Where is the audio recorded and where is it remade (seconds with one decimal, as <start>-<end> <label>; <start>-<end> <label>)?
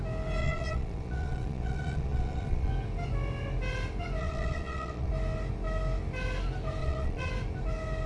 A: 0.0-0.4 recorded; 0.4-2.7 remade; 2.7-4.2 recorded; 4.2-5.1 remade; 5.1-6.8 recorded; 6.8-7.3 remade; 7.3-8.1 recorded